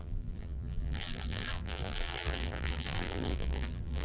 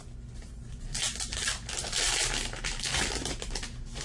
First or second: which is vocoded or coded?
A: first